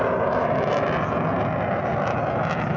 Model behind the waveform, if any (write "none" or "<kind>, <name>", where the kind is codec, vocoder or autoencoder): none